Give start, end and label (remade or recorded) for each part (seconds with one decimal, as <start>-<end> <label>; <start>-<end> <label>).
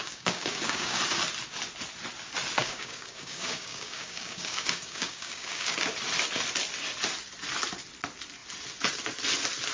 0.0-1.0 remade; 1.0-2.6 recorded; 2.6-5.9 remade; 5.9-9.7 recorded